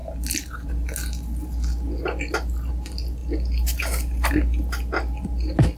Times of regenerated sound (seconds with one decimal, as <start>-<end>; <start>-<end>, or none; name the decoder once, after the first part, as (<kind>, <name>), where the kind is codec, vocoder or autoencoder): none

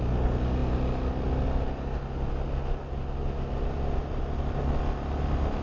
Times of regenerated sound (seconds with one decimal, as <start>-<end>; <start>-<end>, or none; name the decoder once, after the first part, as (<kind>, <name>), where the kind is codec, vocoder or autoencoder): none

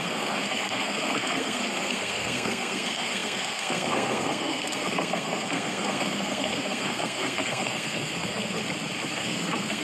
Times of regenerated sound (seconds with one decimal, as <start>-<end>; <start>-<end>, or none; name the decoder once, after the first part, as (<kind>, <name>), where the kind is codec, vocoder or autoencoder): 0.0-8.6 (codec, SNAC); 9.1-9.8

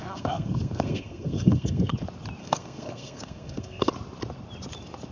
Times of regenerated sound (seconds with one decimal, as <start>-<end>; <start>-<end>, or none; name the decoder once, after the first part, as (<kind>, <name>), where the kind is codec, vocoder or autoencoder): 0.0-1.9 (codec, SNAC); 2.4-3.9

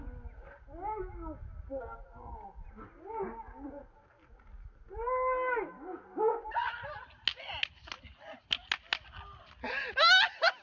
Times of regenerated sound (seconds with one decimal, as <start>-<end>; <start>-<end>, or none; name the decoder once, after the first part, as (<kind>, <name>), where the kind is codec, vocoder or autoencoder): none

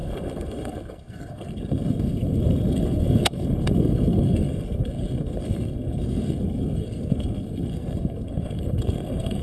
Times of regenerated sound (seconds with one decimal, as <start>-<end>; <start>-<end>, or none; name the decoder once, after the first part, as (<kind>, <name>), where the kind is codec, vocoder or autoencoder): 0.0-9.4 (codec, SNAC)

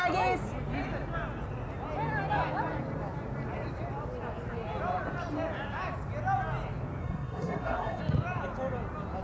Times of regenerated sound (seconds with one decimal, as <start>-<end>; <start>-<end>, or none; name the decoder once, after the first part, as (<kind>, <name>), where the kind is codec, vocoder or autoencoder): 7.0-8.0 (codec, SNAC)

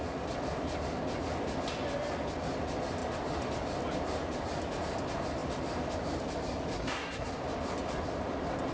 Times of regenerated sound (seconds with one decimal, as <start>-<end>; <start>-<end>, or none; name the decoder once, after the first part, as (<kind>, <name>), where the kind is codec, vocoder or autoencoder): 6.7-7.3 (codec, SNAC)